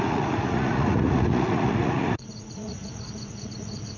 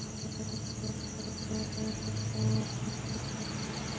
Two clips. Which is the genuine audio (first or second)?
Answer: second